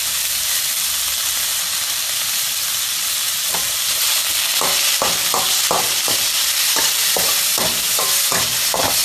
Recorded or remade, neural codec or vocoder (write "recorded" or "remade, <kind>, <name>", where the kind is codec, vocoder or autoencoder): recorded